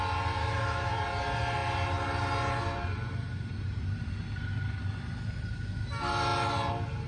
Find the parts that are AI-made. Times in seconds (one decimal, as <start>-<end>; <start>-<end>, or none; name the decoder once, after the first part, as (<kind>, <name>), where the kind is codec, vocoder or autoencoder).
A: 0.4-0.9 (autoencoder, DAC-VAE)